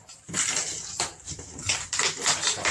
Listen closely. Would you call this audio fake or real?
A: real